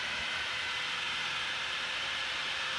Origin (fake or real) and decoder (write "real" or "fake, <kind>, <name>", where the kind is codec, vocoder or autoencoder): fake, vocoder, BigVGAN v2